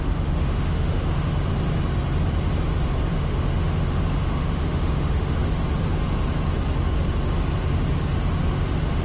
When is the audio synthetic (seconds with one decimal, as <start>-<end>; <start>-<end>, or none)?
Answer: 0.0-1.5; 3.1-5.6; 8.5-9.0